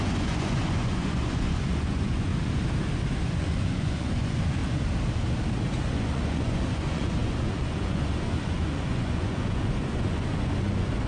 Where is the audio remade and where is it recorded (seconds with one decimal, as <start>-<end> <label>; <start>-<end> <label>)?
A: 0.0-2.3 remade; 2.3-3.2 recorded; 3.2-4.6 remade; 4.6-5.8 recorded; 5.8-11.1 remade